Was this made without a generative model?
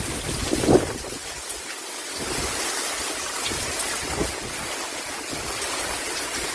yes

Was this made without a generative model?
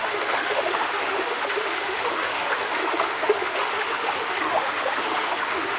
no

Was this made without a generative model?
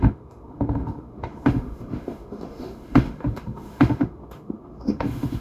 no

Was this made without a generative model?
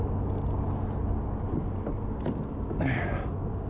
yes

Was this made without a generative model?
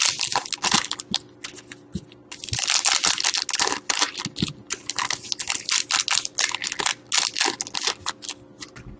yes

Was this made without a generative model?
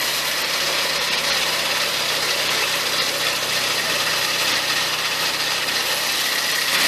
yes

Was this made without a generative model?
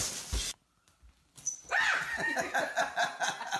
yes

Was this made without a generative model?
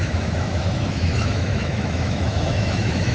no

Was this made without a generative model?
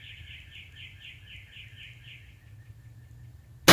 yes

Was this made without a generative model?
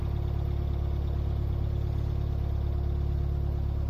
yes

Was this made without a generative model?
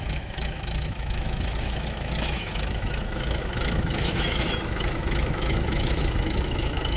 no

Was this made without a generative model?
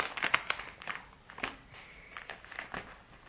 yes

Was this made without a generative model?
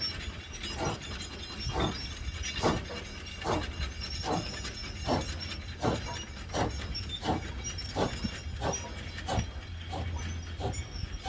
yes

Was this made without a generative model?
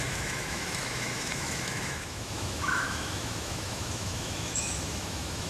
no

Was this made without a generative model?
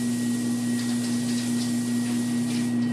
yes